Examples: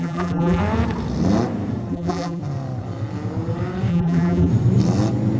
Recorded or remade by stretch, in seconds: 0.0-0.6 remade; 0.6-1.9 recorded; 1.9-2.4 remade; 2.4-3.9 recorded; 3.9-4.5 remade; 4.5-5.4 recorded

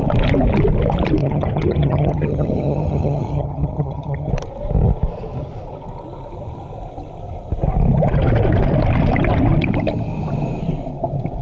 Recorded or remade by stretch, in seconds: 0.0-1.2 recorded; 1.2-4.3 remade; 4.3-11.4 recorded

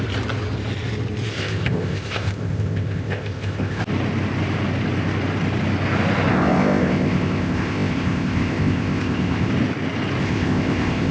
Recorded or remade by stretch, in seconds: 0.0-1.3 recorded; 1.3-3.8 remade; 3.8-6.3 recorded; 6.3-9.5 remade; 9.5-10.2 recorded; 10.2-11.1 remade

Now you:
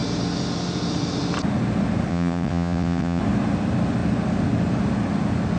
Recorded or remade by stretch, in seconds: 0.0-2.1 recorded; 2.1-3.2 remade; 3.2-5.6 recorded

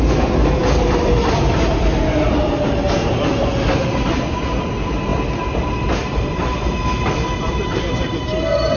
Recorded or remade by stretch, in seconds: 0.0-8.8 recorded

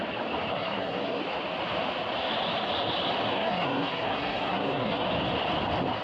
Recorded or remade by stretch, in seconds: 0.0-0.5 recorded; 0.5-1.2 remade; 1.2-3.3 recorded; 3.3-5.1 remade; 5.1-6.0 recorded